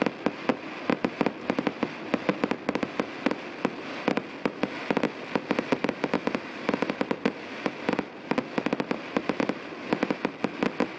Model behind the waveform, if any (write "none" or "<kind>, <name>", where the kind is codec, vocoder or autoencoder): none